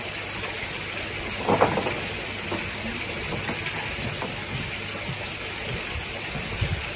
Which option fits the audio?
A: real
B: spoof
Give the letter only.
A